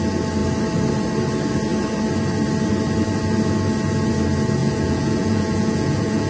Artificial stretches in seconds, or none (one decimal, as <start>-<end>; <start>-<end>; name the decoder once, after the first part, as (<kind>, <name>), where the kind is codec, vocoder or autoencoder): 4.6-6.3 (vocoder, Vocos)